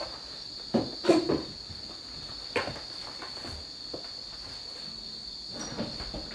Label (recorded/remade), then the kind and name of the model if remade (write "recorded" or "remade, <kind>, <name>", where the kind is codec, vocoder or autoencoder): recorded